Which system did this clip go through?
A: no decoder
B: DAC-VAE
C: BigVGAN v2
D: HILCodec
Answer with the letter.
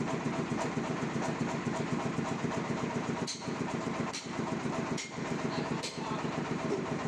C